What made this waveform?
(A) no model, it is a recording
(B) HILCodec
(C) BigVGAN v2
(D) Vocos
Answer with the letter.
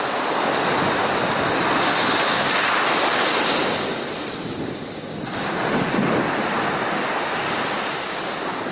A